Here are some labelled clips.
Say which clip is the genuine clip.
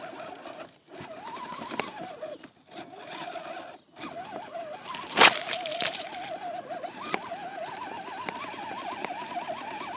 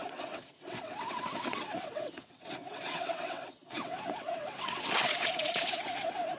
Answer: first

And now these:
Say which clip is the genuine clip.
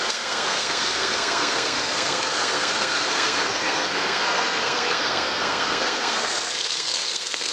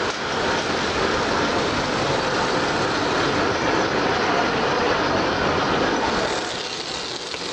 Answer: second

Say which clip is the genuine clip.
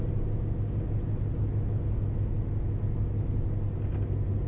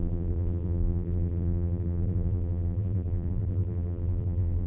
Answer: first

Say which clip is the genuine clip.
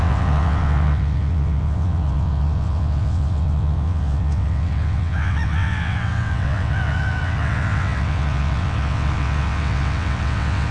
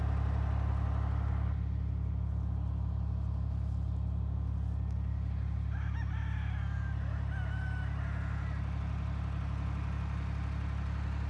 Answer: second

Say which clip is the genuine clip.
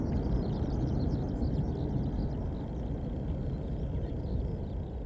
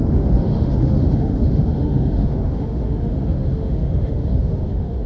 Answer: first